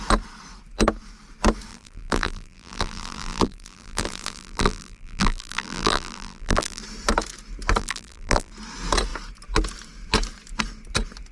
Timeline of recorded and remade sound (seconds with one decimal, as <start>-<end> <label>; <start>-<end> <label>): 0.0-1.7 recorded; 1.7-6.8 remade; 6.8-7.8 recorded; 7.8-8.5 remade; 8.5-11.3 recorded